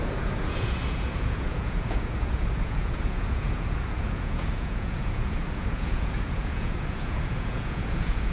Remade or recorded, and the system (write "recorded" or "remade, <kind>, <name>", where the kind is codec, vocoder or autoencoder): remade, vocoder, Vocos